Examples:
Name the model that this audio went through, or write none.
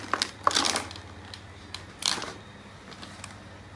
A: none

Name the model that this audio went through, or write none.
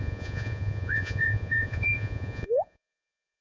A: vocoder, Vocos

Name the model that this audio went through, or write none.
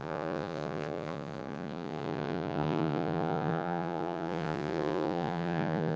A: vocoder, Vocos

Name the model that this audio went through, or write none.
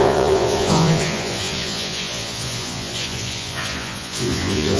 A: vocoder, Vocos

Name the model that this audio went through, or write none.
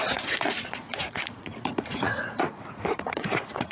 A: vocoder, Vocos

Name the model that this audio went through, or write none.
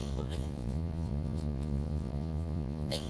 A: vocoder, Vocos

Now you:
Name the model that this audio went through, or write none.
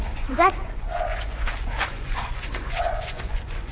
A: vocoder, Vocos